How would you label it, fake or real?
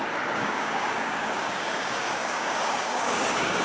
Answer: fake